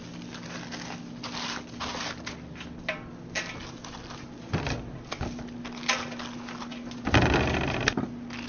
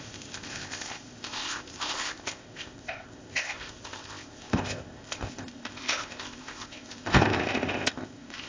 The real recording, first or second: first